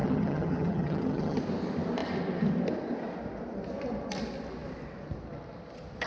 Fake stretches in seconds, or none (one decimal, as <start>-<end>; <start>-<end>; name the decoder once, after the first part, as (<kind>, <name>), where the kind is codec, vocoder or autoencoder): 0.0-1.4 (vocoder, HiFi-GAN)